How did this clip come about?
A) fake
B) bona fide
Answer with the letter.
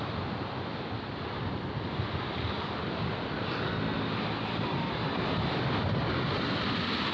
B